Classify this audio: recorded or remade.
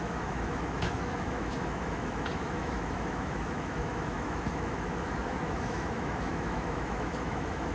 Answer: remade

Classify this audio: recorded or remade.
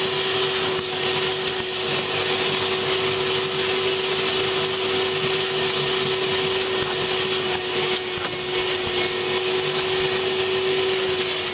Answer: recorded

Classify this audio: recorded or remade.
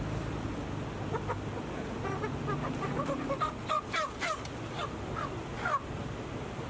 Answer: recorded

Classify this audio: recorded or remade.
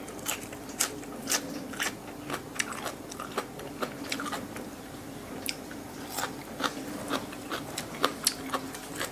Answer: recorded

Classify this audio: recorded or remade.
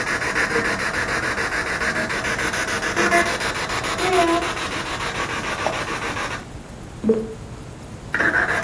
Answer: recorded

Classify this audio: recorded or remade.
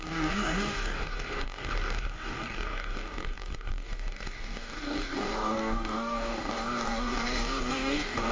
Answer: remade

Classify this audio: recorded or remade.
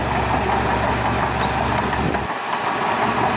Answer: recorded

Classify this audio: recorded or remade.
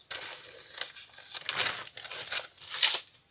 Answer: recorded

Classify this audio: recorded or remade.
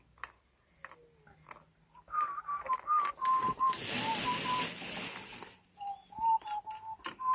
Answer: recorded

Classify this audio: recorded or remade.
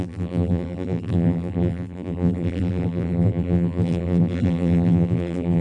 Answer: remade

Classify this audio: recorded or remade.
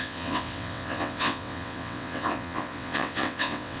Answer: remade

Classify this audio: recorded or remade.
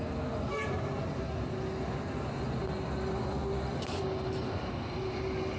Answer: recorded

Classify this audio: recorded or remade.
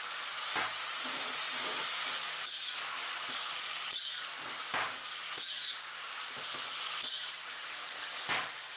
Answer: recorded